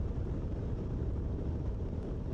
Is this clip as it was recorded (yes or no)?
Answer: no